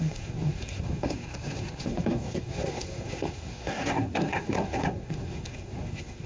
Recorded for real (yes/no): no